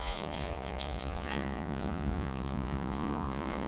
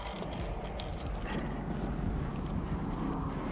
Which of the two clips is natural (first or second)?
second